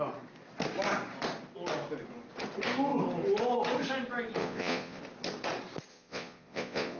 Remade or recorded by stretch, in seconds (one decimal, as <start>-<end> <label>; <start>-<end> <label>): 0.0-4.4 recorded; 4.4-5.0 remade; 5.0-5.9 recorded; 5.9-7.0 remade